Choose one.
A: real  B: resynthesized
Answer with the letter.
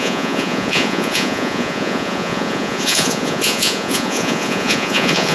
B